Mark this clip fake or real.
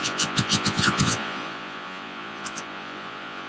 fake